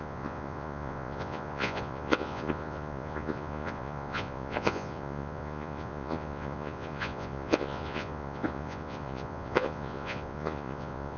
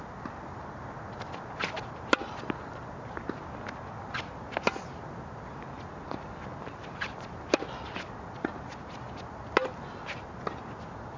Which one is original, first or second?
second